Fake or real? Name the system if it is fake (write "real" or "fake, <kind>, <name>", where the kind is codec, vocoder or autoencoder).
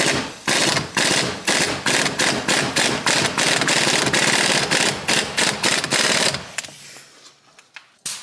real